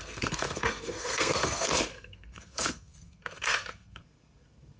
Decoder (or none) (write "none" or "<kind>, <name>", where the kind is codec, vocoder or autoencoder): codec, SNAC